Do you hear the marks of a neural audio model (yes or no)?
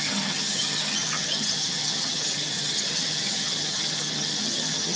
yes